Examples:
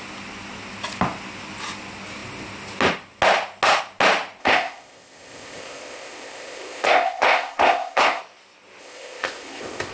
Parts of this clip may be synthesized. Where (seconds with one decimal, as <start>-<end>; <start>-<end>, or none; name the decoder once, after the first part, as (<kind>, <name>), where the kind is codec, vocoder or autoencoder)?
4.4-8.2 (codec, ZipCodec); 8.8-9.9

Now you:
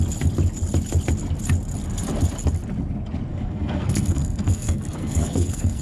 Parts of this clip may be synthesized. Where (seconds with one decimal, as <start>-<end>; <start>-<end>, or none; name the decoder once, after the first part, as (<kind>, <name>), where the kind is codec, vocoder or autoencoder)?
3.3-5.8 (codec, SNAC)

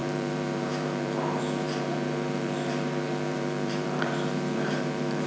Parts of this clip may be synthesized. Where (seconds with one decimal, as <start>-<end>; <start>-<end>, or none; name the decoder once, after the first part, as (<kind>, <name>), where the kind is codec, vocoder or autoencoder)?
0.0-5.3 (vocoder, BigVGAN v2)

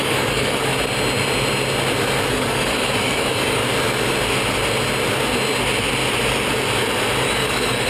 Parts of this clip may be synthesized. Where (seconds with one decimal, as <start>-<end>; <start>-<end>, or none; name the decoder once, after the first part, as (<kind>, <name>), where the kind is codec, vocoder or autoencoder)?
0.0-0.7 (codec, DAC); 2.3-3.6; 7.2-7.9